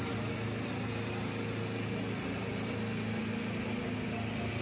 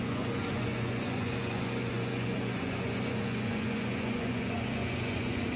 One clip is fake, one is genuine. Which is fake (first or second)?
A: second